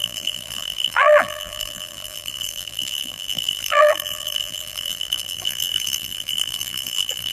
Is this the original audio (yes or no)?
no